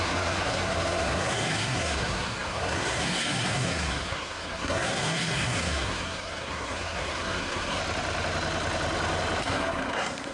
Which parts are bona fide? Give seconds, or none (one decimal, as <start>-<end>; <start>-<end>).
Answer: 7.8-9.4